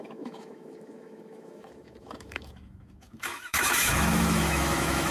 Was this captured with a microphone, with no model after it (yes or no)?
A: no